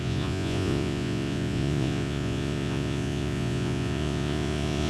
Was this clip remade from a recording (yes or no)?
yes